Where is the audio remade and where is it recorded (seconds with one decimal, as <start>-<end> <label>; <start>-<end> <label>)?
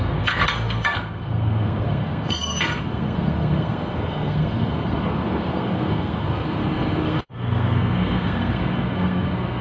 0.0-9.6 remade